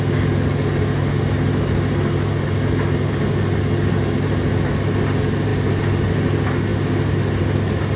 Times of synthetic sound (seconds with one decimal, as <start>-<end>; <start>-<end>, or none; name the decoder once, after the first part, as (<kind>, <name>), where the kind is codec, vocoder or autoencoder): none